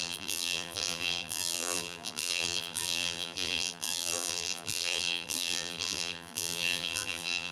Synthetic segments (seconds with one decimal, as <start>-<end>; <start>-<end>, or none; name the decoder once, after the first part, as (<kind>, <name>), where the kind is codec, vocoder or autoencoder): 0.0-7.5 (vocoder, BigVGAN v2)